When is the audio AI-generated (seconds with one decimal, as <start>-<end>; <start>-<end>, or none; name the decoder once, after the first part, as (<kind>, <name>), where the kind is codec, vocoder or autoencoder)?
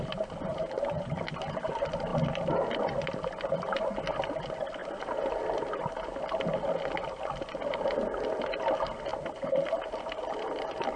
0.5-1.7 (vocoder, BigVGAN v2)